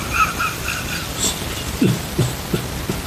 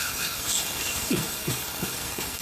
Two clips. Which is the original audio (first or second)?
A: first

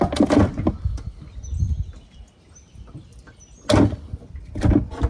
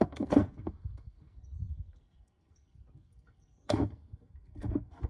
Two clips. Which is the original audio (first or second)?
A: first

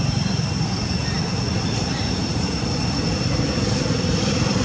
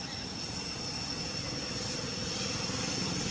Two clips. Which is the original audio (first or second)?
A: second